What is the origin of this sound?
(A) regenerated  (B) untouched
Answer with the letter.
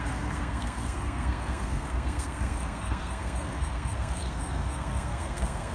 A